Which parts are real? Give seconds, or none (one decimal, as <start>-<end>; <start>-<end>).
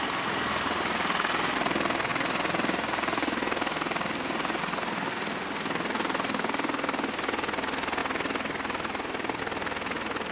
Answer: 0.0-10.3